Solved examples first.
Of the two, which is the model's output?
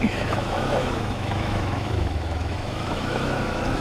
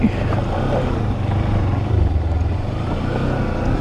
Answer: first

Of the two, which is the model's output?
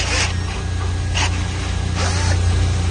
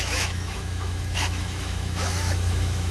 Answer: second